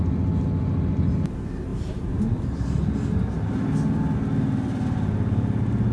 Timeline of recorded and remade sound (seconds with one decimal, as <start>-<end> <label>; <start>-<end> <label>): 0.0-1.7 recorded; 1.7-2.2 remade; 2.2-5.9 recorded

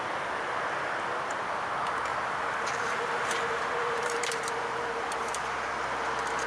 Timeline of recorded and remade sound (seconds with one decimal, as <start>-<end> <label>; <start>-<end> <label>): 0.0-2.1 recorded; 2.1-5.7 remade; 5.7-6.5 recorded

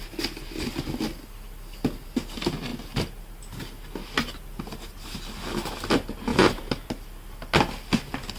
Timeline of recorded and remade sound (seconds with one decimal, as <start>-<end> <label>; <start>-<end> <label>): 0.0-6.3 recorded; 6.3-6.9 remade; 6.9-8.4 recorded